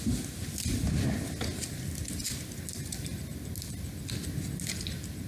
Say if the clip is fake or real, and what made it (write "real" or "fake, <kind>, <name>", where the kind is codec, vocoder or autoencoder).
real